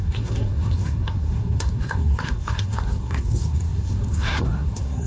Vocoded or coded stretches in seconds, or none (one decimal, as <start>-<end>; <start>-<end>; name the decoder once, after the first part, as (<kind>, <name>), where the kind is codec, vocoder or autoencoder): 0.0-5.1 (codec, SNAC)